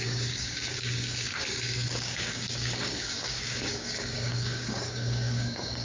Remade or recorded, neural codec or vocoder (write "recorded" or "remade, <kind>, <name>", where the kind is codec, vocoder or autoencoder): remade, codec, DAC